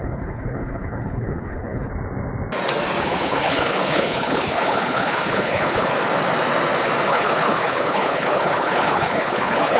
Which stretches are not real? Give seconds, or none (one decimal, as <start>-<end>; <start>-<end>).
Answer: 0.0-1.9; 3.0-5.9; 7.1-9.8